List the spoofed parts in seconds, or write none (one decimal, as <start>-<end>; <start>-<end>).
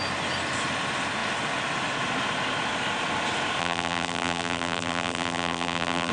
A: 3.6-6.1